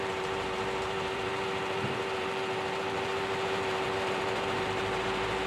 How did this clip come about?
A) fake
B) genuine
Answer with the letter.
A